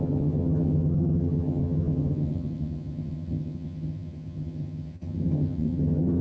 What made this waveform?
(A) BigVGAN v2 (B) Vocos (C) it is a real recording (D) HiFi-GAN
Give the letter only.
D